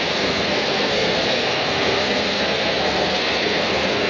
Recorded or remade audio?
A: remade